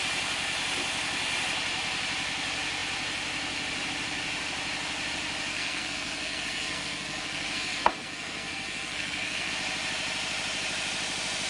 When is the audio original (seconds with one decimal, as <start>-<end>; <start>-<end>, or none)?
0.0-5.5; 9.5-11.5